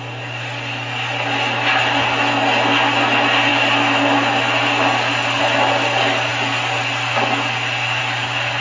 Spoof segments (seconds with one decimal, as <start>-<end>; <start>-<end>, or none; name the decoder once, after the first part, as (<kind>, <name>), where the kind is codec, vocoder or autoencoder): none